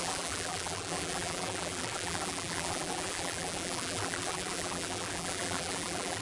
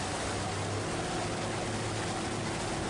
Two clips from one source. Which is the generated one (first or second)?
first